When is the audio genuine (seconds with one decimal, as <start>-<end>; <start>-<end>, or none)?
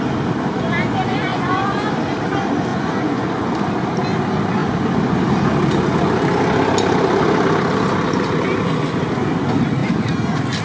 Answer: 0.0-1.3; 1.9-2.7; 3.5-10.6